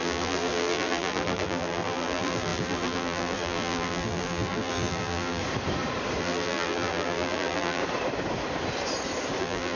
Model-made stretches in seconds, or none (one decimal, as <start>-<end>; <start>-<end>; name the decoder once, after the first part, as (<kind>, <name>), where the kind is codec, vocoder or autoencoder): 0.0-5.4 (vocoder, BigVGAN v2); 6.2-7.8; 9.4-9.8